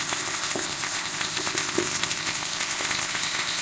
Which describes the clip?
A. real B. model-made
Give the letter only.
B